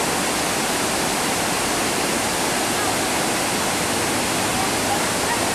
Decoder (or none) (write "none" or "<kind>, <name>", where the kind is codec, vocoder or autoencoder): none